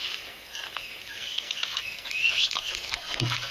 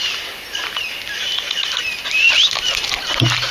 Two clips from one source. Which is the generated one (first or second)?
first